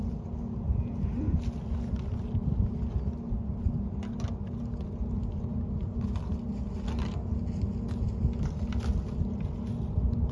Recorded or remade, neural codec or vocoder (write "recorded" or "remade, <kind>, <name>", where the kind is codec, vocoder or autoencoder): recorded